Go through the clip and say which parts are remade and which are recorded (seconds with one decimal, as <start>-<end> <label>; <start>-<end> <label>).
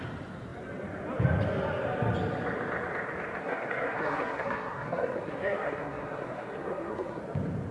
0.0-3.4 recorded; 3.4-7.2 remade; 7.2-7.7 recorded